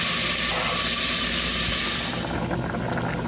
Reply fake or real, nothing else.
real